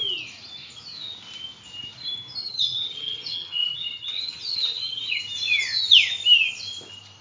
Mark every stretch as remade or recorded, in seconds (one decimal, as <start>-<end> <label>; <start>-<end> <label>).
0.0-2.4 recorded; 2.4-5.2 remade; 5.2-7.2 recorded